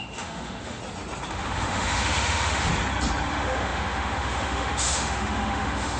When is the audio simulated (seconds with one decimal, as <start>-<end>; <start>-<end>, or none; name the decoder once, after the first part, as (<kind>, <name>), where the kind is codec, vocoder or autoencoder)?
0.0-0.8 (autoencoder, DAC-VAE); 1.3-2.7; 3.3-6.0